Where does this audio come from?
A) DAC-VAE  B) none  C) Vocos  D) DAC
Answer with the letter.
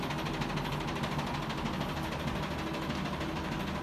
B